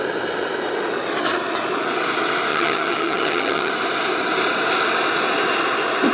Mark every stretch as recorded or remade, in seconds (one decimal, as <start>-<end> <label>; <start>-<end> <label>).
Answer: 0.0-2.5 recorded; 2.5-3.7 remade; 3.7-6.1 recorded